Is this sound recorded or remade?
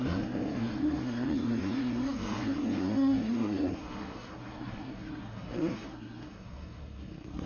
remade